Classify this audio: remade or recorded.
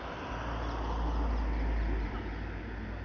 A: recorded